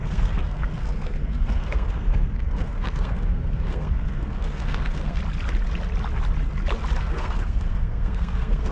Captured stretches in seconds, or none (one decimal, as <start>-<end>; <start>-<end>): 5.2-7.0